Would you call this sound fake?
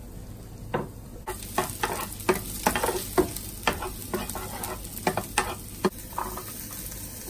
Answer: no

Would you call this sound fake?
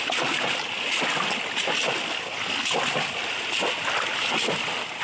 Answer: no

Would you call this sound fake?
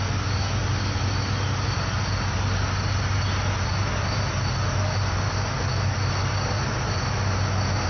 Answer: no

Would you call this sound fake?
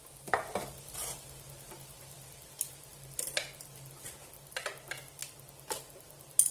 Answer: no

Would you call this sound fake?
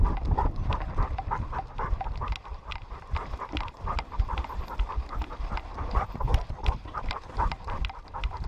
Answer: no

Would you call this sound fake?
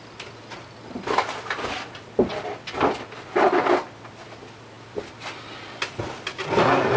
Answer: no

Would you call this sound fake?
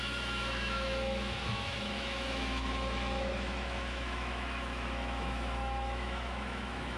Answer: yes